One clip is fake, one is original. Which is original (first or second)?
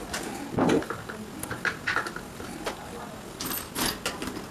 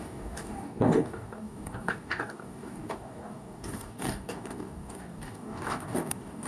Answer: first